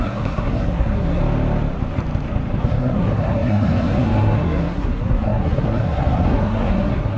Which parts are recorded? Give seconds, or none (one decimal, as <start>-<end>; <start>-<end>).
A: 1.2-2.6